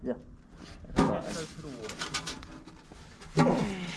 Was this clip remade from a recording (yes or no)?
no